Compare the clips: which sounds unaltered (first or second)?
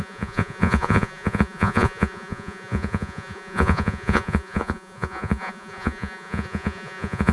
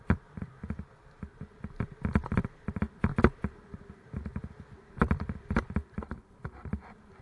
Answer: second